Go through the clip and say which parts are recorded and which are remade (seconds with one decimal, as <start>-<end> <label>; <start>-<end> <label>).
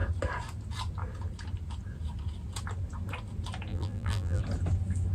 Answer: 0.0-3.7 recorded; 3.7-4.4 remade; 4.4-5.1 recorded